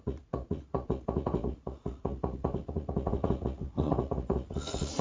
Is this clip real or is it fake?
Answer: fake